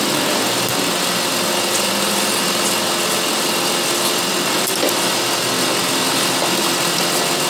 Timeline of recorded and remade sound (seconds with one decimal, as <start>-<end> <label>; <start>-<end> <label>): 0.0-7.5 recorded